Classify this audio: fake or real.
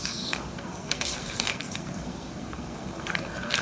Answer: fake